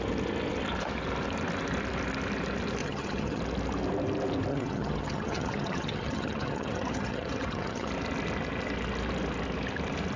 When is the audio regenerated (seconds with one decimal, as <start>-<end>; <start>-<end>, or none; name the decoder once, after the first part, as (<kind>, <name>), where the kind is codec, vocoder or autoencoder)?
2.8-3.4 (vocoder, HiFi-GAN); 4.5-7.9